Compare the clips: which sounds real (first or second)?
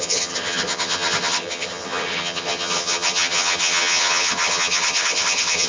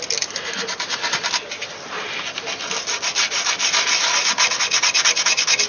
second